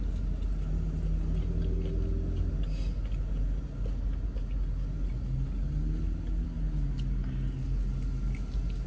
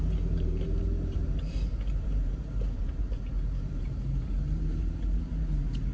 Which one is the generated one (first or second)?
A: second